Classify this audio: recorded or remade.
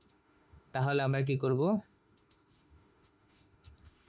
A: remade